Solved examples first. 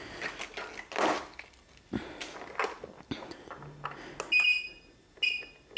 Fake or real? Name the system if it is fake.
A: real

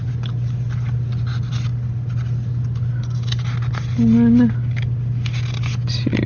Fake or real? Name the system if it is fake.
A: real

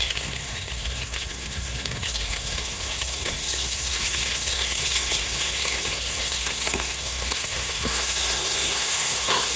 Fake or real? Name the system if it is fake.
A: fake, codec, SNAC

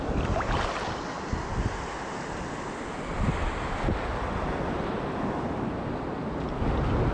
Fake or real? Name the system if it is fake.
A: real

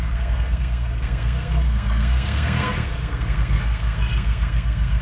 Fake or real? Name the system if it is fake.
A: fake, codec, SNAC